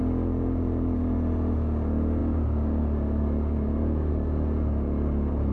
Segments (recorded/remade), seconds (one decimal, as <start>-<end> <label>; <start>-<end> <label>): 0.0-5.5 recorded